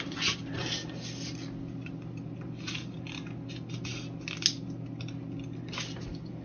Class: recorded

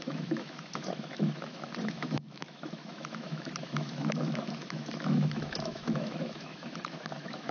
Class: remade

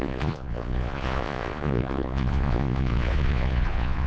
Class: remade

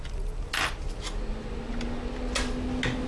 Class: recorded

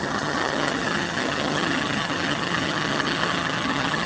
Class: remade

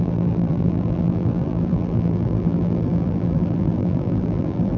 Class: remade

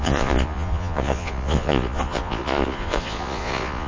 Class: remade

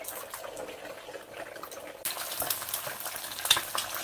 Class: recorded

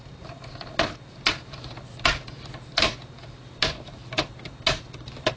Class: recorded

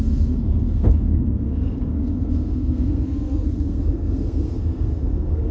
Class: remade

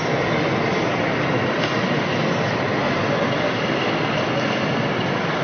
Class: recorded